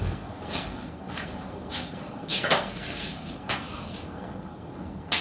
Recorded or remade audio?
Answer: remade